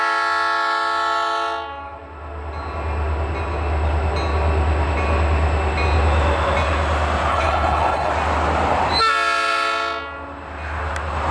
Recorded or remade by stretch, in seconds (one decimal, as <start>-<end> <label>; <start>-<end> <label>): 0.0-7.3 recorded; 7.3-8.1 remade; 8.1-11.3 recorded